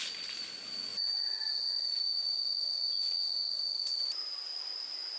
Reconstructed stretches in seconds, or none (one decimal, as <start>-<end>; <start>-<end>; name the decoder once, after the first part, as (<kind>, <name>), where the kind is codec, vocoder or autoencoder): none

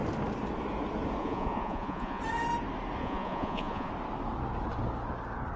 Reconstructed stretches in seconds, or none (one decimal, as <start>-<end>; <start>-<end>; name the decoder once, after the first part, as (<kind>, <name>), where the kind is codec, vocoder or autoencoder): 1.2-2.2 (vocoder, Vocos); 3.0-3.9

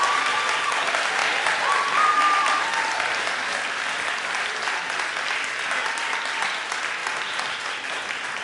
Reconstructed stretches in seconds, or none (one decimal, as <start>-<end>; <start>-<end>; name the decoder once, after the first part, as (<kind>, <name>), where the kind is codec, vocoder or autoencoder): none

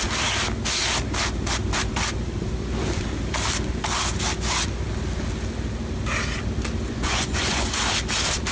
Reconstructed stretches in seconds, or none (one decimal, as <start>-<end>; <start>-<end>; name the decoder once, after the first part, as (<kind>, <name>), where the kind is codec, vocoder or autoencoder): 6.9-7.8 (vocoder, Vocos)

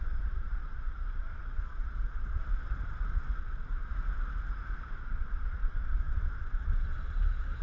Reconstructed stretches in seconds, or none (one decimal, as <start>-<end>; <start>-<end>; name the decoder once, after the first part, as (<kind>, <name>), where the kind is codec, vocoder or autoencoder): 0.0-2.4 (vocoder, Vocos); 3.4-3.9; 5.0-7.6